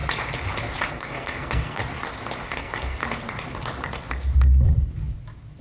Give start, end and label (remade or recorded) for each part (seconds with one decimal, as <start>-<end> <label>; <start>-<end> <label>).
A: 0.0-0.9 recorded; 0.9-1.8 remade; 1.8-2.6 recorded; 2.6-3.0 remade; 3.0-5.6 recorded